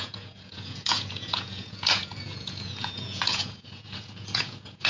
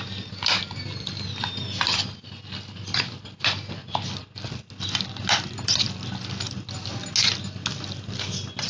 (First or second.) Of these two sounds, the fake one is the first